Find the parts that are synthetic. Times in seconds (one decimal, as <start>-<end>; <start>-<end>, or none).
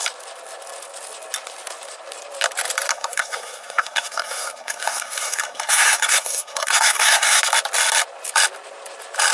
2.9-7.4